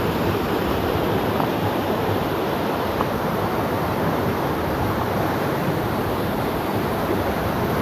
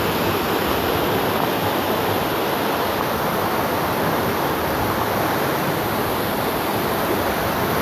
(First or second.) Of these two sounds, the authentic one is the second